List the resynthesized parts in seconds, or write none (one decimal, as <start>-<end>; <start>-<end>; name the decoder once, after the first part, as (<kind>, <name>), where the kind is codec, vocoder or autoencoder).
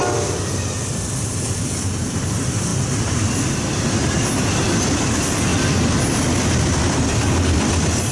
none